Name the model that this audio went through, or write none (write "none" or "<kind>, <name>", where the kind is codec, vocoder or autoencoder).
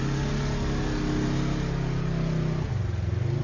none